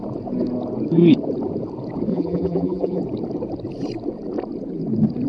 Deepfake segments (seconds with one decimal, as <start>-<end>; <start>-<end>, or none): 2.1-3.0